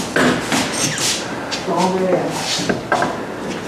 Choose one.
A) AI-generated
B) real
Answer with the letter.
B